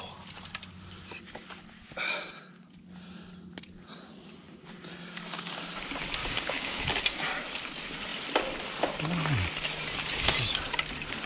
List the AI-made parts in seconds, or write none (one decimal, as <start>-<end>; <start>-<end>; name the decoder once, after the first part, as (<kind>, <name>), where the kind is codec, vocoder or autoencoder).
6.2-6.8 (codec, DAC)